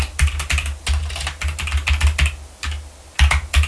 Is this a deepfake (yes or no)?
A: no